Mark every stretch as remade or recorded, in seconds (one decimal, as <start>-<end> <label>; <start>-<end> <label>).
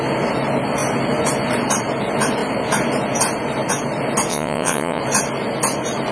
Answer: 0.0-4.3 recorded; 4.3-5.0 remade; 5.0-6.1 recorded